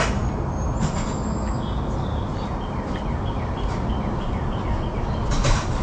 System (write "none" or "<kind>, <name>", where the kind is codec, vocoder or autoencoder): none